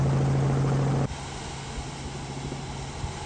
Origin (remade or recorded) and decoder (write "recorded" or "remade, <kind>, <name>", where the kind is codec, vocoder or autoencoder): recorded